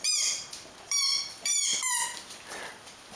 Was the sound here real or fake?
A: fake